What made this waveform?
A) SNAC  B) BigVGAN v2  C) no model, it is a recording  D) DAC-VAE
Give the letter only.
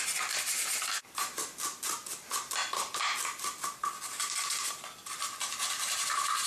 C